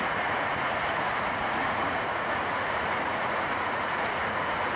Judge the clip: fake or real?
fake